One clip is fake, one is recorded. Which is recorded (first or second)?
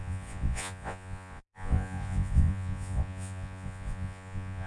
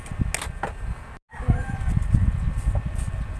second